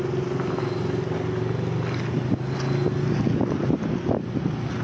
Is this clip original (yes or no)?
yes